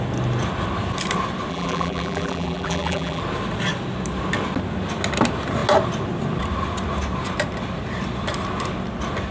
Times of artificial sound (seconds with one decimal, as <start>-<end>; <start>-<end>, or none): 1.5-3.2